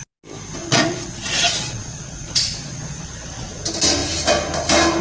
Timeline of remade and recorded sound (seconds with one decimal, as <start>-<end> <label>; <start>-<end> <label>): 0.0-0.6 recorded; 0.6-3.6 remade; 3.6-5.0 recorded